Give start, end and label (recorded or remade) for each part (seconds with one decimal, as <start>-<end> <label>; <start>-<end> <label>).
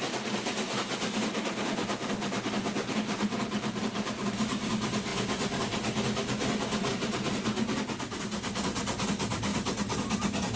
0.0-10.6 recorded